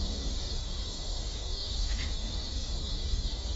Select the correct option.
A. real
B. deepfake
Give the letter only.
B